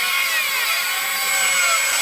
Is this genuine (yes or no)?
yes